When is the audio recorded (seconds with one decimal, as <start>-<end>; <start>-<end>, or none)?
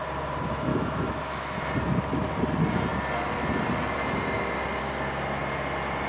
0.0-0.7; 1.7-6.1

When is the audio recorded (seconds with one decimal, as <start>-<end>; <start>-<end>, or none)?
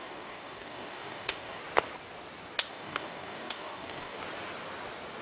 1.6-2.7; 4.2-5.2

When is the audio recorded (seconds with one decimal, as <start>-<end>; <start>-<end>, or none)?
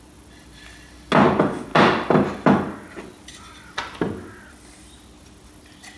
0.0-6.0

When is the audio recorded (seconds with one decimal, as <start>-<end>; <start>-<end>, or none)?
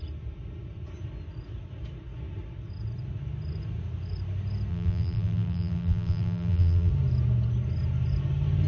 0.0-4.7; 6.9-8.7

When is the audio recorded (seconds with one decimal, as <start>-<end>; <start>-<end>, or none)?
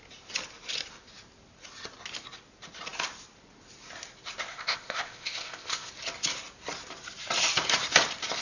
0.0-4.5; 5.9-8.4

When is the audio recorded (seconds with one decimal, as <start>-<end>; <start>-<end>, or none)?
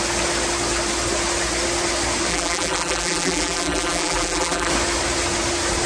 0.0-2.3; 4.7-5.9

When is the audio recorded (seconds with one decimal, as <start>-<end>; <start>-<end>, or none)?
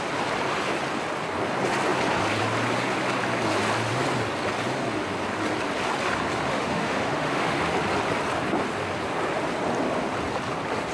0.0-6.5; 7.6-10.9